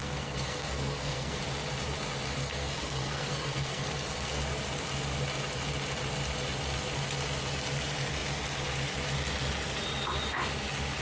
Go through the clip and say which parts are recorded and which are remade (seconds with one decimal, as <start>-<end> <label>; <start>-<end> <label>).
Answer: 0.0-1.4 remade; 1.4-2.4 recorded; 2.4-4.4 remade; 4.4-11.0 recorded